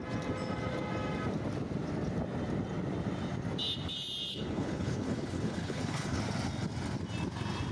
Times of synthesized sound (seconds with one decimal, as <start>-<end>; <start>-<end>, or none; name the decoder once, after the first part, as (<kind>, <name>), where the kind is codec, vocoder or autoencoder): 4.3-6.2 (codec, HILCodec)